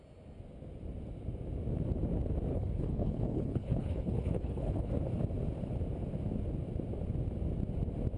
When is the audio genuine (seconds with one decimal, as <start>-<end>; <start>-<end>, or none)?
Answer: 0.0-2.5; 4.9-8.2

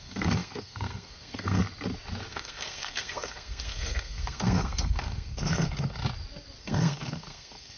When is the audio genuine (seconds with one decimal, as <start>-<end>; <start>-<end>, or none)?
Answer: 1.6-2.3; 6.0-6.6

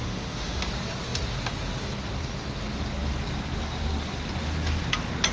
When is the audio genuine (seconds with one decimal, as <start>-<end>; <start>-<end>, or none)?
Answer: 0.6-5.3